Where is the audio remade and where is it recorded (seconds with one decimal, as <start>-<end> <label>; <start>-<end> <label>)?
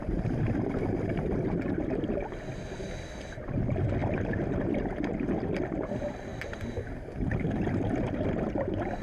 0.0-9.0 recorded